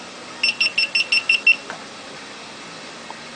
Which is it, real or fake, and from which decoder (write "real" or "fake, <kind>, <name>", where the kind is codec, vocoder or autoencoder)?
real